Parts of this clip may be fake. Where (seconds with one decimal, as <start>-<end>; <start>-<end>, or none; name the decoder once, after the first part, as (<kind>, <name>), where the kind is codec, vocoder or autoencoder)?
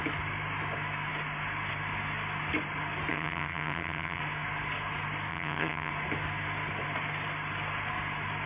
3.1-4.2 (vocoder, HiFi-GAN); 5.3-5.9